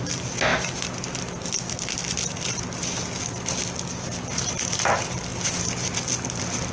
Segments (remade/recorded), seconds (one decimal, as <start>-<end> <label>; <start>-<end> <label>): 0.0-6.7 recorded